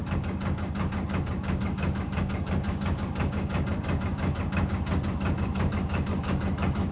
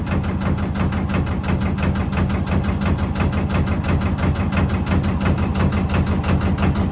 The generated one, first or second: first